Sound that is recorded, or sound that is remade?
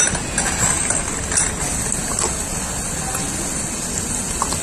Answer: recorded